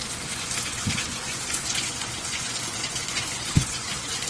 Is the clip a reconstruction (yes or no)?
yes